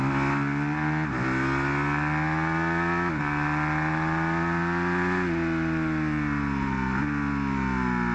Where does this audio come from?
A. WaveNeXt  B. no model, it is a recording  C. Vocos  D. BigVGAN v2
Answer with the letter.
B